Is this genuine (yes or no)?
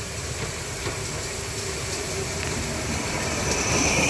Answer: yes